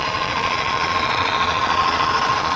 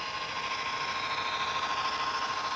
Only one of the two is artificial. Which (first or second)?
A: first